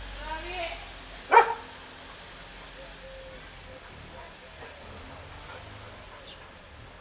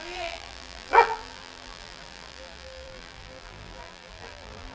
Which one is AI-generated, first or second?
second